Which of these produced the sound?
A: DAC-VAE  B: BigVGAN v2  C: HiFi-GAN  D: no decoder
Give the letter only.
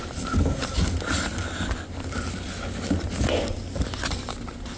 D